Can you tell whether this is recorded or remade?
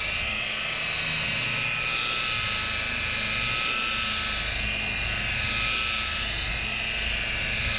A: recorded